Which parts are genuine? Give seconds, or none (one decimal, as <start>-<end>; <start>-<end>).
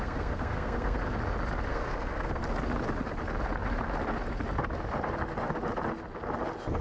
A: 1.0-1.7; 2.4-6.8